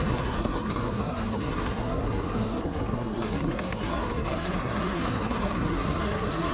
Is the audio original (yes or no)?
no